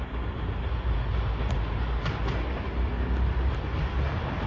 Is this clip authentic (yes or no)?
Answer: yes